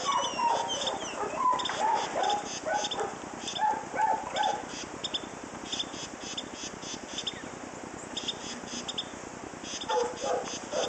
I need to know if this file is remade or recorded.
recorded